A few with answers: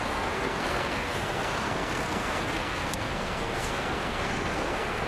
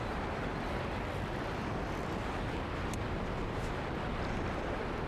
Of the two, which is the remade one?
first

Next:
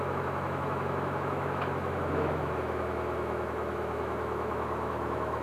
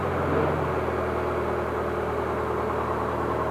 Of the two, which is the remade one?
first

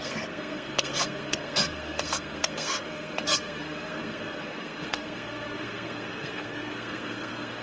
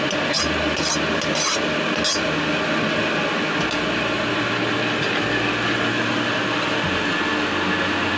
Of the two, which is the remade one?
first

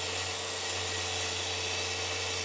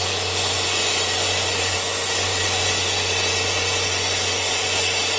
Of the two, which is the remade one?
second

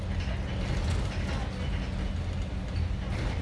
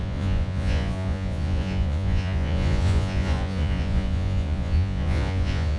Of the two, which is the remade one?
second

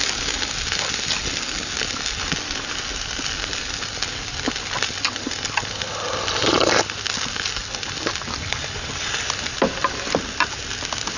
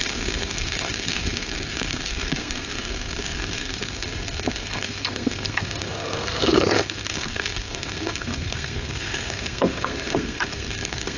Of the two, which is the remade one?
second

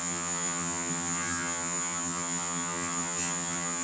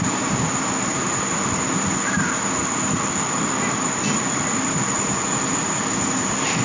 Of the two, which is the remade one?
first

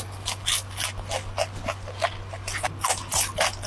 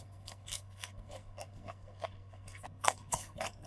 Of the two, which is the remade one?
second